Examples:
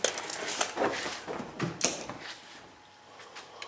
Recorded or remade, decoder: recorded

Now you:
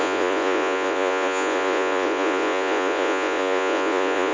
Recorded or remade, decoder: remade, vocoder, Vocos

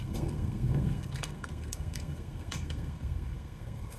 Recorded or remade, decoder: remade, codec, SNAC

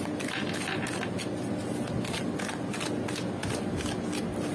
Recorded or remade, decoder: recorded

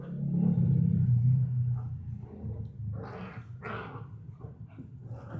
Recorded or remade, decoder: recorded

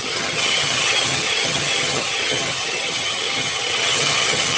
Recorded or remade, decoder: remade, vocoder, HiFi-GAN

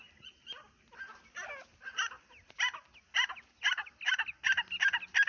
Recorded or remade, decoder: recorded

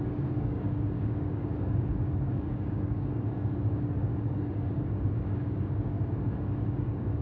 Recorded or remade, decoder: remade, codec, DAC